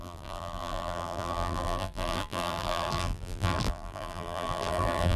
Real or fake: fake